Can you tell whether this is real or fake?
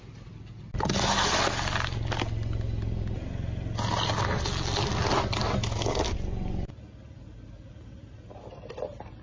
real